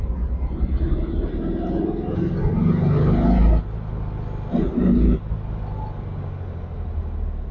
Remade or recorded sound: recorded